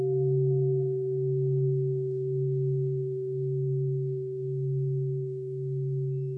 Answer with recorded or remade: remade